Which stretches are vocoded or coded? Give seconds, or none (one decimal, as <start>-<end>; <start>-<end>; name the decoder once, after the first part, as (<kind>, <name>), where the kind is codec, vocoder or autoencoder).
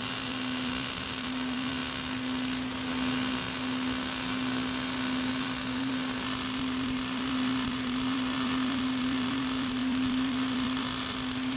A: 0.0-1.8 (vocoder, BigVGAN v2); 5.3-11.6